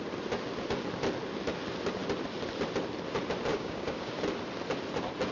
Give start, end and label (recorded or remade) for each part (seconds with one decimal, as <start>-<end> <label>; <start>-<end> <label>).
0.0-3.5 recorded; 3.5-4.1 remade; 4.1-5.3 recorded

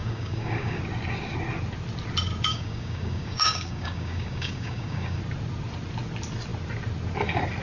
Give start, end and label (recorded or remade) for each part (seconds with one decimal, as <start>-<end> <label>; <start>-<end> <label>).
0.0-0.8 remade; 0.8-2.5 recorded; 2.5-5.2 remade; 5.2-7.6 recorded

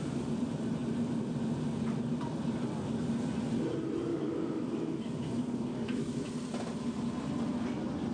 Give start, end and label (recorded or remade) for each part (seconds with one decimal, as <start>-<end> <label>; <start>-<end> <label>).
0.0-4.1 recorded; 4.1-6.3 remade; 6.3-8.1 recorded

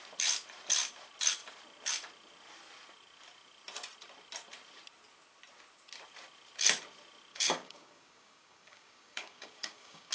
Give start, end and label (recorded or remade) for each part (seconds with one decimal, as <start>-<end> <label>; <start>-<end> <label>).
0.0-7.3 recorded; 7.3-10.1 remade

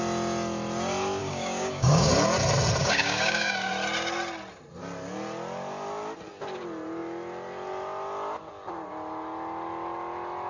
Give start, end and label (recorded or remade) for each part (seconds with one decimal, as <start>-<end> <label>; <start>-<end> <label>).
0.0-1.2 recorded; 1.2-2.1 remade; 2.1-2.8 recorded; 2.8-3.7 remade; 3.7-10.5 recorded

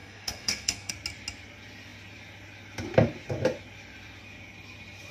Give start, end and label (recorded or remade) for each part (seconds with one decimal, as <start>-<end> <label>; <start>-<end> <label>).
0.0-0.9 remade; 0.9-5.1 recorded

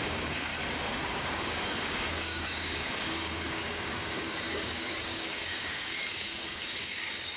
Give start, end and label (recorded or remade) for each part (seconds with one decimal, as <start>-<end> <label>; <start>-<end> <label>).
0.0-0.5 remade; 0.5-1.2 recorded; 1.2-7.4 remade